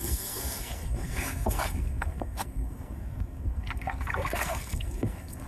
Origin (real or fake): fake